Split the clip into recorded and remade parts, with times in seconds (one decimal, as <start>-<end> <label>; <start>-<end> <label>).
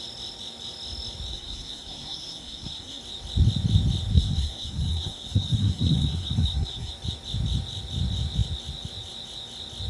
0.0-1.3 recorded; 1.3-3.0 remade; 3.0-4.1 recorded; 4.1-6.9 remade; 6.9-9.9 recorded